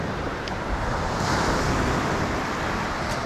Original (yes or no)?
yes